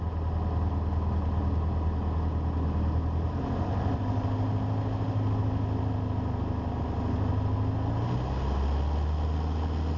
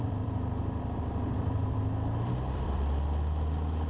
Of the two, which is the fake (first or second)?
second